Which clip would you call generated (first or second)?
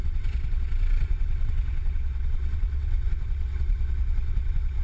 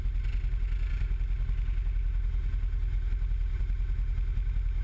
first